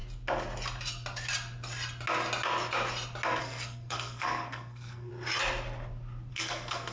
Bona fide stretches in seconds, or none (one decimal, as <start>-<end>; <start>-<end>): 0.0-3.4; 5.1-6.3